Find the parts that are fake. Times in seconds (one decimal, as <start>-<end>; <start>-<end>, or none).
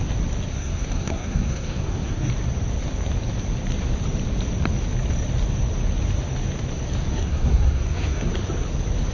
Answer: 0.5-2.3; 7.1-8.3